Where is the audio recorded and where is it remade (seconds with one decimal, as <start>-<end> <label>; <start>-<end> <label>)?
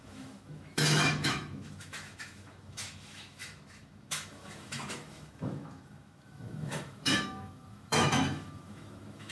0.0-9.3 remade